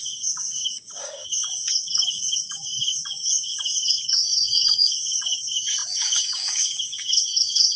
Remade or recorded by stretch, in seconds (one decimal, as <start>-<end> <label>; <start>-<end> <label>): 0.0-7.8 remade

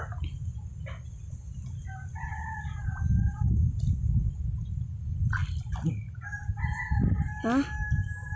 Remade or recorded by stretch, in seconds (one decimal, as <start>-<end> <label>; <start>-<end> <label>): 0.0-8.4 recorded

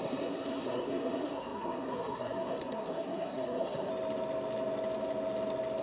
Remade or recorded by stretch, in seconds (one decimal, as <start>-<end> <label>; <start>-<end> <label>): 0.0-3.9 remade; 3.9-5.8 recorded

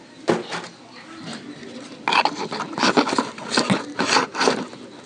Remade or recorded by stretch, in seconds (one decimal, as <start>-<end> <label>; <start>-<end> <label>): 0.0-5.1 recorded

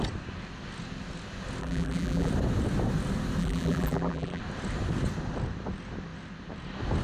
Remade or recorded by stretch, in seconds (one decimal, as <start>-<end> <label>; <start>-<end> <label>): 0.0-1.6 recorded; 1.6-2.3 remade; 2.3-3.4 recorded; 3.4-4.4 remade; 4.4-7.0 recorded

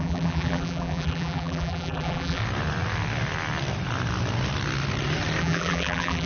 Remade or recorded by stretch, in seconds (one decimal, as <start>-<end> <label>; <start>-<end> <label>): 0.0-2.4 remade; 2.4-5.4 recorded; 5.4-6.3 remade